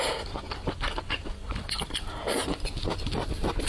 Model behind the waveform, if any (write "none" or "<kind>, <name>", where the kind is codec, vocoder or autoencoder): none